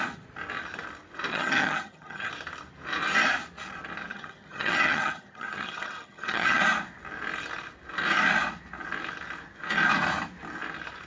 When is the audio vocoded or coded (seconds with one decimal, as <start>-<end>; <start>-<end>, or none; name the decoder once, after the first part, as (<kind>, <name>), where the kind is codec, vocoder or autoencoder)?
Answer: 1.3-2.3 (vocoder, HiFi-GAN); 4.1-6.6